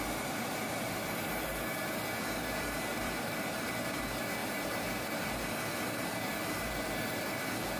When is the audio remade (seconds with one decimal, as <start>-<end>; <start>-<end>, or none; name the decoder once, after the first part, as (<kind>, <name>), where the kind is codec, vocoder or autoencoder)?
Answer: 2.9-4.0 (vocoder, BigVGAN v2)